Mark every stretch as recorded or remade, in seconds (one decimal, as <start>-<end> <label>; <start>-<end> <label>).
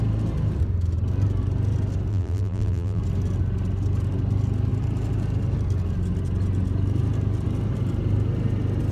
0.0-2.1 recorded; 2.1-3.0 remade; 3.0-8.9 recorded